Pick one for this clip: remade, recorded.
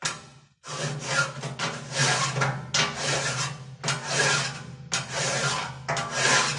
recorded